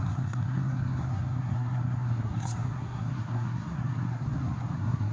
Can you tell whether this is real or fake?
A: fake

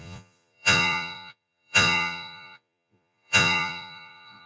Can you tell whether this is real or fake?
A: fake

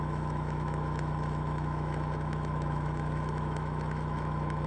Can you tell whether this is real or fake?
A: fake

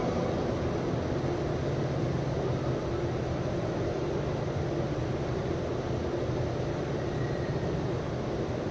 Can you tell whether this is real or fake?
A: real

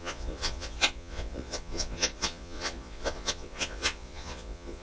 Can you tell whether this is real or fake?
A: fake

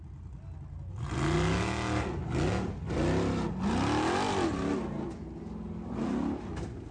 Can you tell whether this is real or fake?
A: real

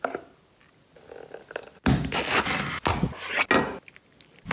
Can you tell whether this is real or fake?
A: real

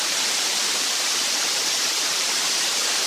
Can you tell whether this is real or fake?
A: fake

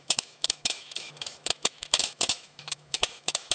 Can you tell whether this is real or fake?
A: fake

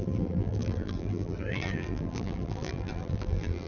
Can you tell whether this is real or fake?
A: fake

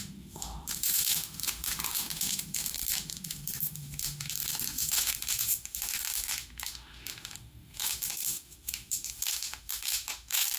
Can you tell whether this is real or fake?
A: fake